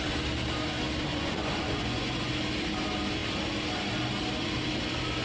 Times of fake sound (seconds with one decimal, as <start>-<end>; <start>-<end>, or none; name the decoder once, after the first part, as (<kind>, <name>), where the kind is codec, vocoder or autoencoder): 1.1-2.3 (vocoder, Vocos)